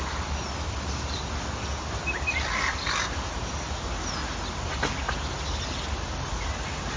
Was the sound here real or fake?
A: real